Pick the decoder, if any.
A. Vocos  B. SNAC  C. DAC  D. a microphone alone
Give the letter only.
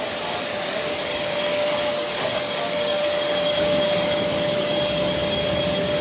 C